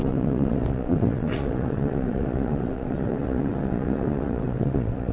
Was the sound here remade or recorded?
remade